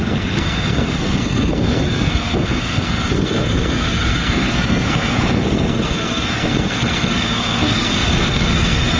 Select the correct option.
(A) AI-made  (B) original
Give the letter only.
A